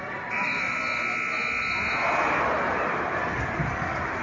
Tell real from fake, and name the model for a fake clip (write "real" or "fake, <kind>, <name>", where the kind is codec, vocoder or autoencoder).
real